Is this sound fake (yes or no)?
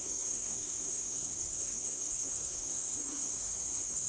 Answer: yes